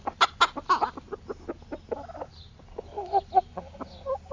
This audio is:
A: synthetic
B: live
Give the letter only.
B